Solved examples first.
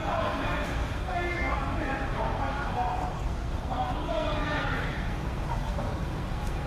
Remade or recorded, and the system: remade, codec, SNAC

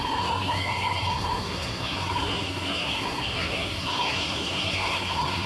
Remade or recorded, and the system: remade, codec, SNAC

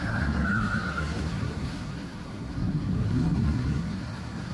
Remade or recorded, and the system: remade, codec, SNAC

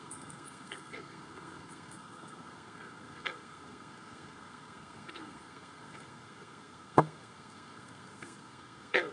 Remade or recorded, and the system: remade, codec, SNAC